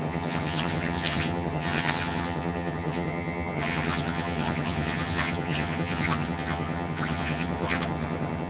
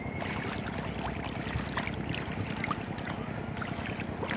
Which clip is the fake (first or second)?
first